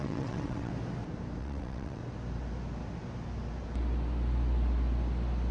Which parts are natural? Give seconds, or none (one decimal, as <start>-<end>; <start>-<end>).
0.7-1.4; 2.0-5.5